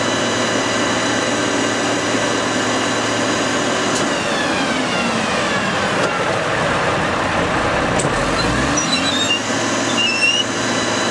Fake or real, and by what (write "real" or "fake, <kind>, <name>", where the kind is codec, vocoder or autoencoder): real